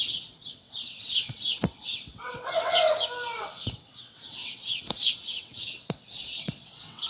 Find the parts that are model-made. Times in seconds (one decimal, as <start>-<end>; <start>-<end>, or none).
0.0-2.8; 3.4-7.1

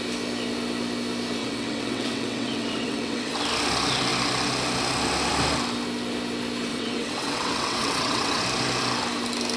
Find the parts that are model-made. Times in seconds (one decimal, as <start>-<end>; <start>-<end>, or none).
1.4-3.3; 6.7-8.4

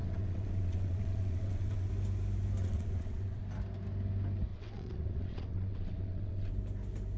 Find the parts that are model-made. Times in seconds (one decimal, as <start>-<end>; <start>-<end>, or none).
0.0-1.9; 2.6-3.4; 4.5-6.5

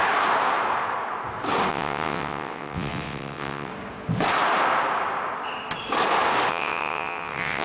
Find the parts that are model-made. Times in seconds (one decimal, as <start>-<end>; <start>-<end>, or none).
1.7-3.7; 6.5-7.6

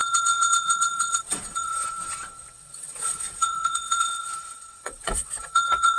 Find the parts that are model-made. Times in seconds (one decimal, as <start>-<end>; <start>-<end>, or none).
0.0-6.0

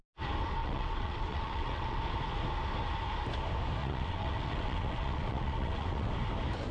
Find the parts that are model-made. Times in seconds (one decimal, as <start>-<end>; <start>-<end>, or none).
0.6-2.0; 3.8-6.1